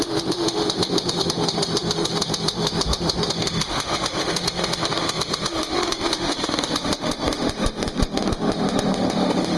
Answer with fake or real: fake